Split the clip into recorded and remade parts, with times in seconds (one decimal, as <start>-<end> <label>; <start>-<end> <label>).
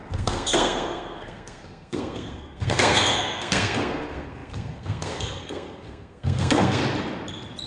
0.0-6.8 remade; 6.8-7.7 recorded